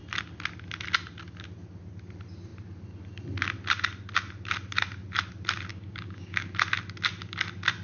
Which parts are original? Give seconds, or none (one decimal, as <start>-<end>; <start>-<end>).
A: 0.0-5.7; 6.5-7.8